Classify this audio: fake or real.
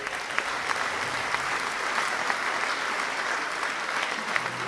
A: real